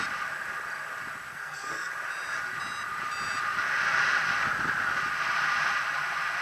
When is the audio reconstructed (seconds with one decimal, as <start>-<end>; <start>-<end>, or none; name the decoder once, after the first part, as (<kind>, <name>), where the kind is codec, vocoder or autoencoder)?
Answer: 1.3-1.9 (codec, SNAC)